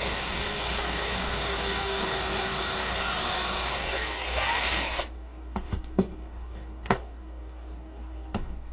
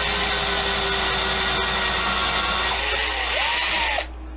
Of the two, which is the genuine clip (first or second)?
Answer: second